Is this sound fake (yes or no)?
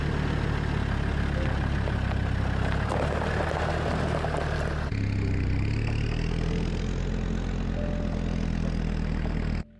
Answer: no